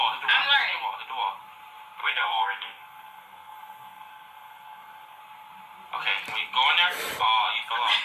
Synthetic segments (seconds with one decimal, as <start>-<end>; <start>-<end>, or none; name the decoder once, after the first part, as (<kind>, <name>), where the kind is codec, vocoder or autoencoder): 2.0-5.2 (codec, SNAC)